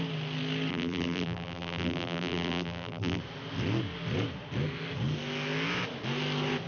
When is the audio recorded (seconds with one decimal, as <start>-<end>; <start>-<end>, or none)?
0.0-0.7; 3.2-6.7